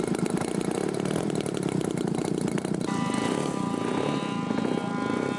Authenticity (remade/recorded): recorded